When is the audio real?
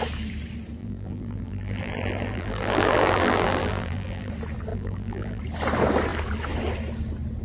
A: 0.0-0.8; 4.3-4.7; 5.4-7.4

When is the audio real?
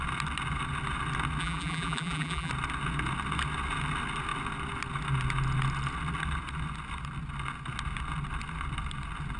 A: 0.0-1.4; 2.5-9.4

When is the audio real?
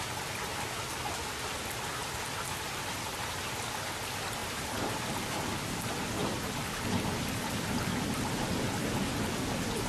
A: 0.0-4.4; 5.4-6.2; 6.7-9.9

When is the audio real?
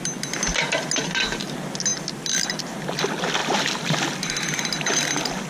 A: 0.0-5.5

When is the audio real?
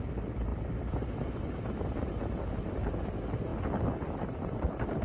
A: 0.0-0.5; 1.4-5.0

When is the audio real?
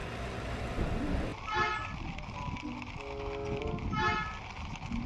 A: 0.6-1.3; 2.5-5.1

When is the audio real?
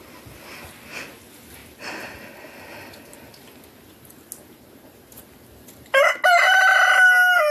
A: 0.0-7.5